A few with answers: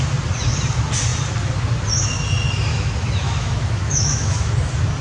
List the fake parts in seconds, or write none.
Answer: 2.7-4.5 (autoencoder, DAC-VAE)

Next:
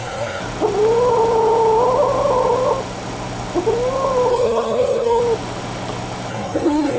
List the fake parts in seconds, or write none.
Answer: 0.0-0.4 (codec, SNAC); 4.3-5.2; 6.3-7.0